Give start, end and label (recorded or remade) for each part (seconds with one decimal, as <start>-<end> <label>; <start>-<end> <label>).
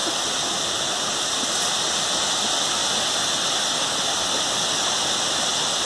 0.0-5.9 recorded